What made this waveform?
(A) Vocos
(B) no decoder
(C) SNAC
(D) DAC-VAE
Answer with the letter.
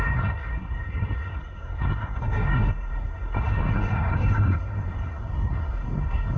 C